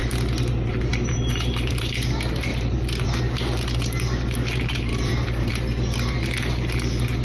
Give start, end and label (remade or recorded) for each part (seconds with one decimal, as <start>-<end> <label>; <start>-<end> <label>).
0.0-1.9 remade; 1.9-2.5 recorded; 2.5-3.2 remade; 3.2-4.9 recorded; 4.9-5.5 remade; 5.5-7.2 recorded

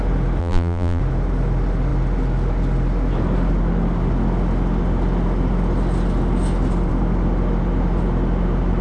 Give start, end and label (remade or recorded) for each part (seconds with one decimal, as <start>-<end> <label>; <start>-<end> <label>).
0.0-0.4 recorded; 0.4-1.0 remade; 1.0-8.8 recorded

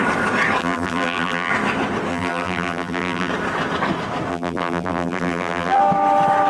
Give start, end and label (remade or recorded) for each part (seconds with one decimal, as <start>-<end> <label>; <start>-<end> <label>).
0.0-0.6 recorded; 0.6-1.5 remade; 1.5-2.1 recorded; 2.1-3.3 remade; 3.3-4.3 recorded; 4.3-5.8 remade; 5.8-6.5 recorded

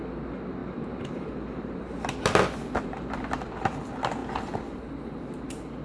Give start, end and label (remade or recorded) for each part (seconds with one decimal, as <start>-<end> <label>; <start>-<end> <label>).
0.0-0.6 recorded; 0.6-2.1 remade; 2.1-4.2 recorded; 4.2-4.7 remade; 4.7-5.8 recorded

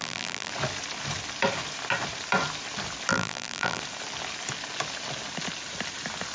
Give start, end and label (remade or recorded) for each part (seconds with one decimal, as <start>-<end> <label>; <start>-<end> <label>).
0.0-0.5 remade; 0.5-3.1 recorded; 3.1-3.8 remade; 3.8-6.3 recorded

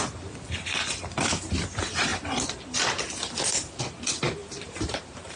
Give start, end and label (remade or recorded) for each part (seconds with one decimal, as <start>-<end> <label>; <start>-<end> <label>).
0.0-4.4 recorded; 4.4-5.4 remade

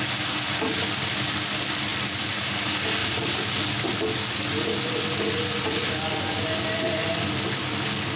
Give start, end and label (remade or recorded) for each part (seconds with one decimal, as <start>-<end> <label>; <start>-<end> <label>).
0.0-1.9 recorded; 1.9-2.4 remade; 2.4-3.0 recorded; 3.0-4.0 remade; 4.0-8.2 recorded